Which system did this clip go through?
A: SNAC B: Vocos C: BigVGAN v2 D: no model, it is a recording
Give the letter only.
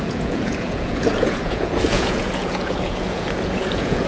B